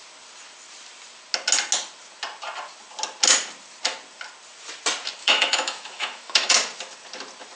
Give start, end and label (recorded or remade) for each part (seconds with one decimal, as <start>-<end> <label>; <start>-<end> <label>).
0.0-5.2 recorded; 5.2-6.5 remade; 6.5-7.6 recorded